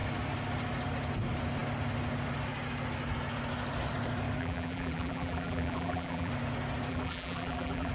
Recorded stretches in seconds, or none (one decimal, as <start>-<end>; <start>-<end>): 0.0-4.4; 6.3-6.9